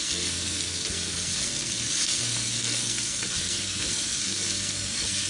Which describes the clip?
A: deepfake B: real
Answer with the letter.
A